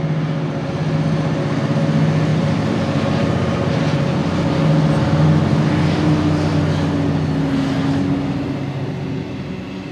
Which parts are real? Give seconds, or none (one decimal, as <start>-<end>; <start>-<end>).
0.0-2.3; 3.8-9.9